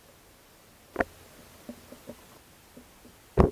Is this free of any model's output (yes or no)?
yes